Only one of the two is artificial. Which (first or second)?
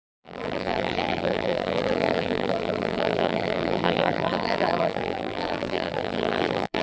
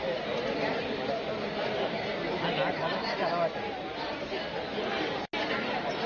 first